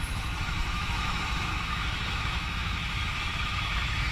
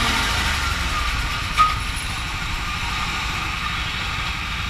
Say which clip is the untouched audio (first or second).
second